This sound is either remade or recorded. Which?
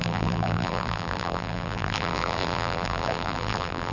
remade